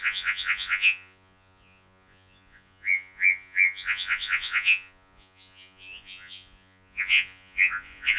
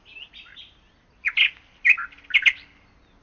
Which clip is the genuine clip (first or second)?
second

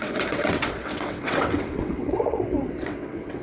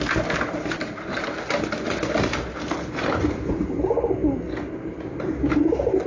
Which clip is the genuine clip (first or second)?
second